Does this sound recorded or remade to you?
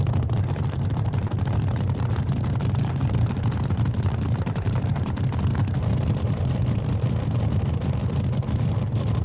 remade